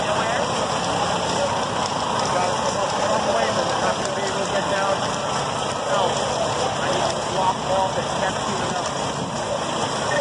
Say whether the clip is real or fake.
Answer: real